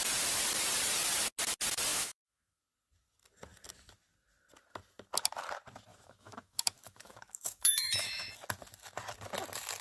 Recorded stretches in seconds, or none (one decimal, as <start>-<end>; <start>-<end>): 0.0-1.9; 2.6-5.9; 8.3-9.8